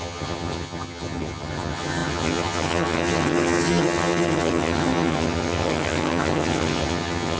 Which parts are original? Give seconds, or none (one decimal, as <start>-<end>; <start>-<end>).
none